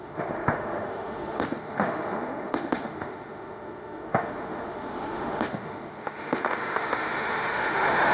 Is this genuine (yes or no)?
no